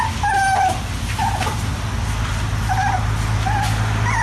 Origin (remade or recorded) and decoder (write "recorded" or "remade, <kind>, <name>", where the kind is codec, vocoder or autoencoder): recorded